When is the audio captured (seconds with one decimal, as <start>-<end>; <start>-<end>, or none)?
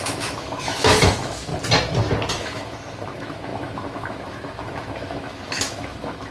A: 1.5-2.3